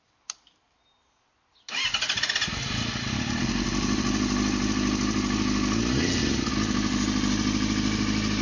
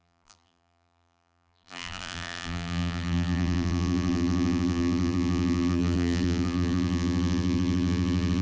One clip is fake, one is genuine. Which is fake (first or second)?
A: second